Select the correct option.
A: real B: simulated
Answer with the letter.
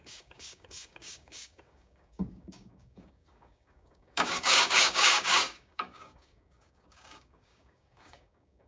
B